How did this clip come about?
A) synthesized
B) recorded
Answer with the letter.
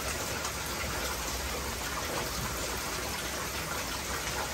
B